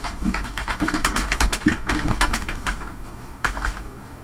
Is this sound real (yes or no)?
no